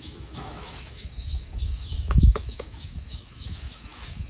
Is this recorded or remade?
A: remade